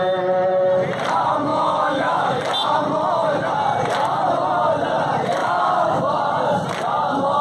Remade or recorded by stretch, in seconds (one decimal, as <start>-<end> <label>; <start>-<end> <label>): 0.0-1.5 recorded; 1.5-2.3 remade; 2.3-5.4 recorded; 5.4-6.2 remade; 6.2-7.4 recorded